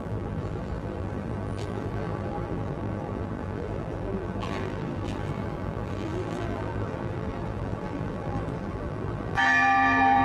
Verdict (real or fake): fake